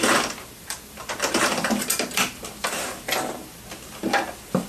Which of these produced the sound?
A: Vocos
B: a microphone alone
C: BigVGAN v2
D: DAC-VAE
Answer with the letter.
C